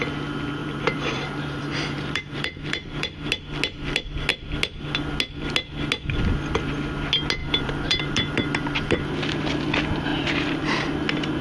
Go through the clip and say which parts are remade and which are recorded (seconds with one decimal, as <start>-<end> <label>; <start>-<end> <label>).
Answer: 0.0-0.6 recorded; 0.6-3.3 remade; 3.3-7.4 recorded; 7.4-9.1 remade; 9.1-10.1 recorded; 10.1-10.6 remade; 10.6-11.4 recorded

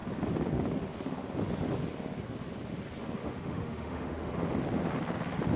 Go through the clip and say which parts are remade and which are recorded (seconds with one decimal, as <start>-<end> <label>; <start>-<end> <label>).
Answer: 0.0-3.2 recorded; 3.2-4.3 remade; 4.3-5.6 recorded

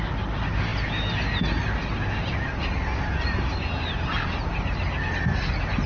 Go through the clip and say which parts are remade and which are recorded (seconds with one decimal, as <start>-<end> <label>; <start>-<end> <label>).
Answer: 0.0-5.9 recorded

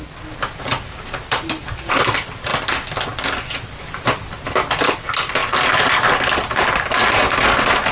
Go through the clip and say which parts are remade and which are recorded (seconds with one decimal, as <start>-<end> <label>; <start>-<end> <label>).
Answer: 0.0-7.9 recorded

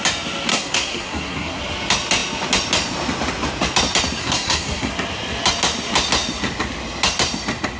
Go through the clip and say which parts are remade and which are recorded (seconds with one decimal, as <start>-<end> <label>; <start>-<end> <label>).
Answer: 0.0-0.5 recorded; 0.5-1.6 remade; 1.6-4.2 recorded; 4.2-4.9 remade; 4.9-7.8 recorded

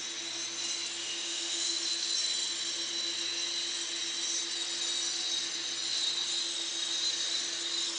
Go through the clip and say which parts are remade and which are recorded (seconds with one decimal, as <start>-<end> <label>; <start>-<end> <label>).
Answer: 0.0-1.0 recorded; 1.0-1.8 remade; 1.8-8.0 recorded

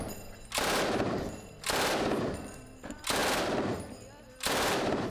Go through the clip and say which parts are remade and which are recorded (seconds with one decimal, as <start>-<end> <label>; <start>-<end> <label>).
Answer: 0.0-5.1 recorded

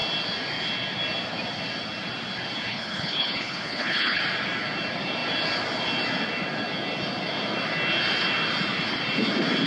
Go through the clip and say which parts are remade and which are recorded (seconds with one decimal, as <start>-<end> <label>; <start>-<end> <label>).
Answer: 0.0-2.7 recorded; 2.7-4.2 remade; 4.2-9.7 recorded